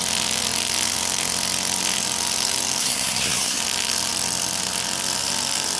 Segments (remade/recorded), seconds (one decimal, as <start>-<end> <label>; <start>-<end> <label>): 0.0-2.8 recorded; 2.8-3.6 remade; 3.6-5.8 recorded